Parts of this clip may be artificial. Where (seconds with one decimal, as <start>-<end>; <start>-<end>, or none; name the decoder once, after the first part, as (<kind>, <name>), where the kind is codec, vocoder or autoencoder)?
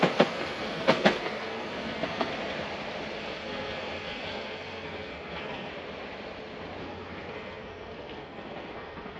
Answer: 0.0-2.3 (codec, SNAC); 3.2-5.7; 6.8-9.2